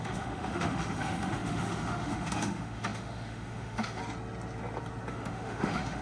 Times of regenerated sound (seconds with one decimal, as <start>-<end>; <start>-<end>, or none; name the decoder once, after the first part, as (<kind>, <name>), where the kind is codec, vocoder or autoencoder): 0.0-4.0 (autoencoder, DAC-VAE); 5.1-6.0